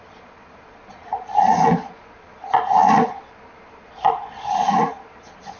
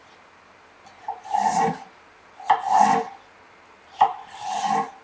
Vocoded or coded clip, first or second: first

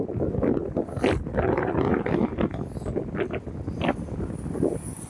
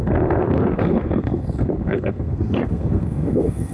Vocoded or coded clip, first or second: second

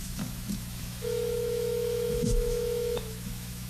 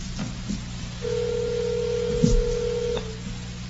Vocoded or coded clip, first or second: first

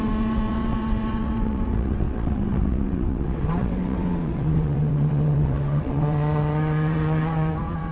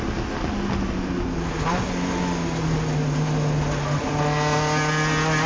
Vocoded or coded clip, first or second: first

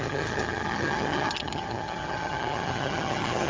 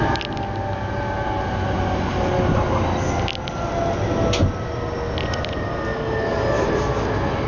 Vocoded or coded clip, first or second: first